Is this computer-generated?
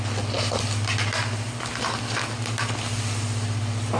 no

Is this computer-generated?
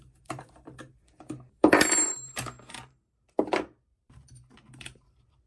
yes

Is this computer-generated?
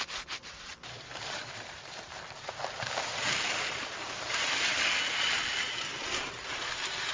yes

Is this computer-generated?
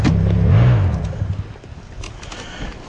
no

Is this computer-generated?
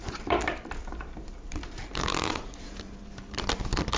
yes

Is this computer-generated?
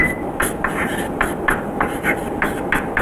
no